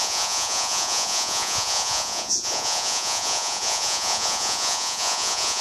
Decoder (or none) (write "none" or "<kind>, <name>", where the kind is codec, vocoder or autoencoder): vocoder, Vocos